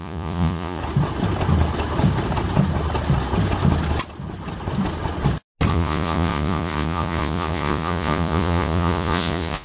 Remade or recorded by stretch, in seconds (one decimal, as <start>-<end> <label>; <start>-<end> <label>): 0.0-0.8 remade; 0.8-5.7 recorded; 5.7-9.6 remade